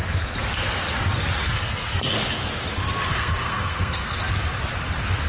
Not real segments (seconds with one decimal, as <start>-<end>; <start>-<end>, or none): 1.4-2.1; 3.1-4.2